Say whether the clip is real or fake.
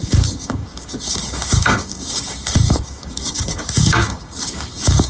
fake